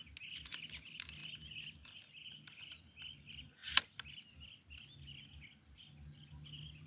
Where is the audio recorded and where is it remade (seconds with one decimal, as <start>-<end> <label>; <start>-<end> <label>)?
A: 0.0-6.9 recorded